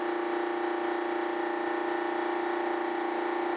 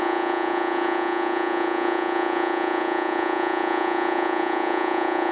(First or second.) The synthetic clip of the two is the second